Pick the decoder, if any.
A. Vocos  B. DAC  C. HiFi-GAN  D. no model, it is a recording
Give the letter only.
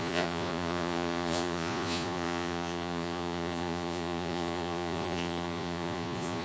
A